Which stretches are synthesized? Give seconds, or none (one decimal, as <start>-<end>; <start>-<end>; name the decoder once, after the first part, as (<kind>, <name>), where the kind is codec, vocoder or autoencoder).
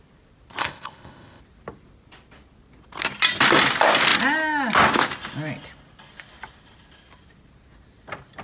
0.6-1.4 (codec, ZipCodec)